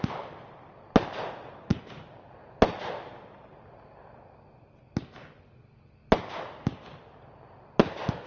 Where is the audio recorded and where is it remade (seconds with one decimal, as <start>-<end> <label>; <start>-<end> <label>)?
0.0-8.3 recorded